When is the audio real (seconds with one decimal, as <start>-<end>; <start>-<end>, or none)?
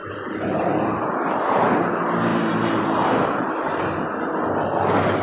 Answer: 0.0-2.3; 3.8-5.2